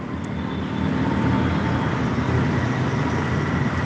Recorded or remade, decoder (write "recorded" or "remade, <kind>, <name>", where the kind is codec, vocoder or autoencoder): recorded